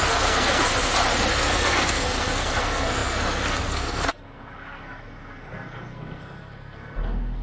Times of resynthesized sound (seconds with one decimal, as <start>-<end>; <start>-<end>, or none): 0.0-0.7; 1.3-7.4